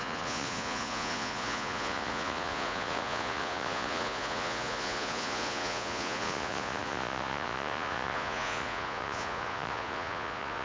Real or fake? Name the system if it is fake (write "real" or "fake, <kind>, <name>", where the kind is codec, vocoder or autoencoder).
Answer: fake, vocoder, Vocos